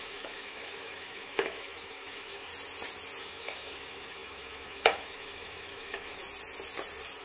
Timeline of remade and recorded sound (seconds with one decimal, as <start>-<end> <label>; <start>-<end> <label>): 0.0-2.5 remade; 2.5-3.2 recorded; 3.2-6.2 remade; 6.2-7.2 recorded